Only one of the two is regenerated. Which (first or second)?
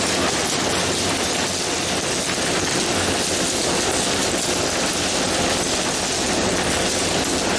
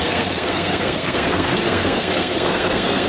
second